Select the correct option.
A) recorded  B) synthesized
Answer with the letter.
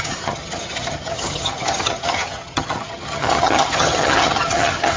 B